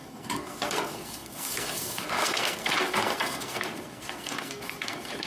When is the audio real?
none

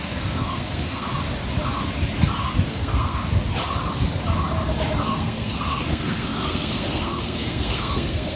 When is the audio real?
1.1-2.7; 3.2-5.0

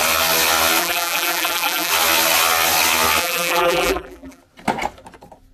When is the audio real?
0.0-0.8; 1.9-3.2; 4.4-5.5